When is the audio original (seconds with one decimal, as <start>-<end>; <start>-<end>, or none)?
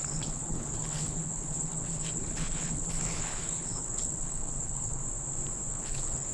5.0-5.7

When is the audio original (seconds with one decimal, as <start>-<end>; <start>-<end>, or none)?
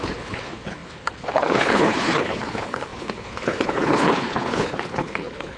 none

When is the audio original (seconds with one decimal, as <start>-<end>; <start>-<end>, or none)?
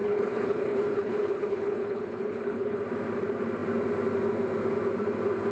2.8-5.5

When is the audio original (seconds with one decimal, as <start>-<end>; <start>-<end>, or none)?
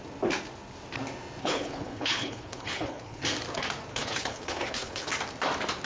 0.0-1.4; 3.2-3.9; 5.1-5.8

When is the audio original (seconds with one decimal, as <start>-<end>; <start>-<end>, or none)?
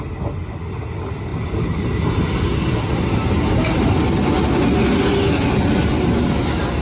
0.0-6.8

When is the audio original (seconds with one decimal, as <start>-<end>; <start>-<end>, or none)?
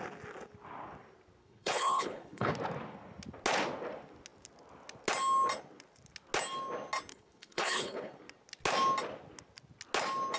0.0-1.4; 2.5-7.1; 8.1-10.4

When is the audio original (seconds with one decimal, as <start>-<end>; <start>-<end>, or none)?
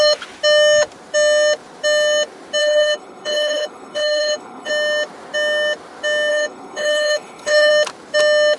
0.0-2.6; 4.7-6.3; 7.7-8.6